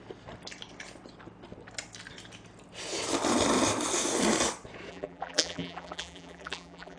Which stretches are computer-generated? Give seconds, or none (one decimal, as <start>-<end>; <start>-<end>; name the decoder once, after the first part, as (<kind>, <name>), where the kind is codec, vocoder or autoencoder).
4.9-7.0 (vocoder, BigVGAN v2)